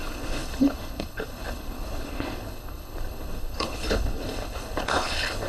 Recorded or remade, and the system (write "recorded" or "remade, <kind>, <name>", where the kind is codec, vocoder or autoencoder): remade, codec, HILCodec